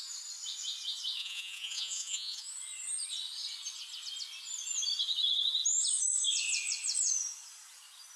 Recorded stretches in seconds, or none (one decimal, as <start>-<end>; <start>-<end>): 0.0-1.2; 2.5-8.2